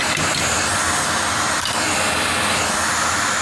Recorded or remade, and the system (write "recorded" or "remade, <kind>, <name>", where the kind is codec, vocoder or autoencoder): remade, vocoder, BigVGAN v2